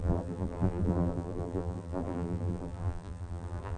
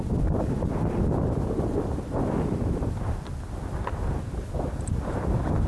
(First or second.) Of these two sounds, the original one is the second